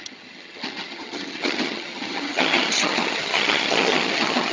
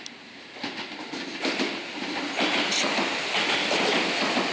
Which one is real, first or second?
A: second